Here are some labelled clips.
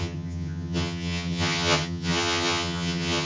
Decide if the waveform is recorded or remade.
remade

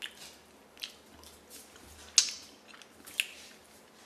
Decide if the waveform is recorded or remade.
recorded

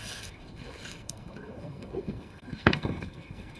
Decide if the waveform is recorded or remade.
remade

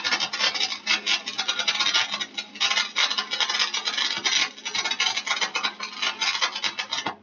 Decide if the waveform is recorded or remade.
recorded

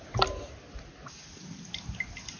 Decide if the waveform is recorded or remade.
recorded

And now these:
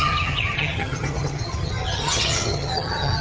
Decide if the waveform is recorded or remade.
remade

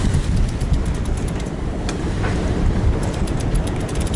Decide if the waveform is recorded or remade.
remade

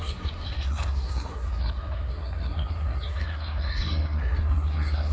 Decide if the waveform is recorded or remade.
remade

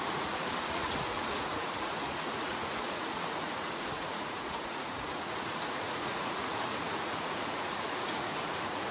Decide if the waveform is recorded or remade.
remade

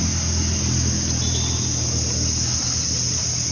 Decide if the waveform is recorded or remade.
recorded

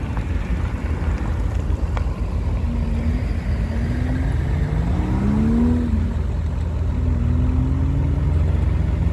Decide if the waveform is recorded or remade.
recorded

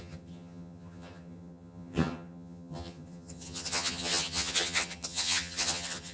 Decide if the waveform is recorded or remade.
remade